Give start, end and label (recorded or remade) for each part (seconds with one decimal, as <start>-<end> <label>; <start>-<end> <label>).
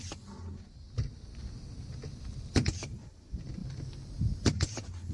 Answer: 0.0-5.1 recorded